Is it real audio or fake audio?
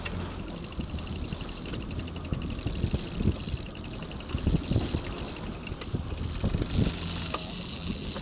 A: real